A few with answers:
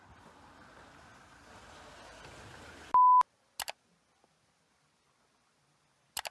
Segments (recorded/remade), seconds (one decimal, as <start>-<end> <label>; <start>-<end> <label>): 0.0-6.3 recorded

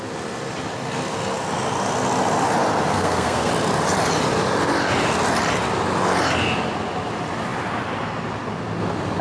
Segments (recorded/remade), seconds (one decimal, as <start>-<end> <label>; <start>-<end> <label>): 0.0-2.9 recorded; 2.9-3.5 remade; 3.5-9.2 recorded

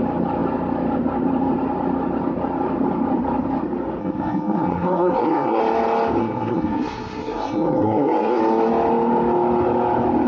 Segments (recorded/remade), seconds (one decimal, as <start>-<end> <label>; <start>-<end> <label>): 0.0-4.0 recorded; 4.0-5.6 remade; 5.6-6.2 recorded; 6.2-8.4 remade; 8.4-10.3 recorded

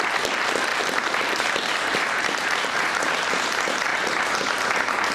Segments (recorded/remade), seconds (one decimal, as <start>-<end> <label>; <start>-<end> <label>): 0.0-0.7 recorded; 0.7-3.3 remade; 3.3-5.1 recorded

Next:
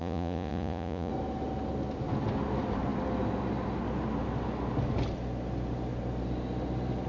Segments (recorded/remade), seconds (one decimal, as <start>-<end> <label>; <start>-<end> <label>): 0.0-1.1 remade; 1.1-7.1 recorded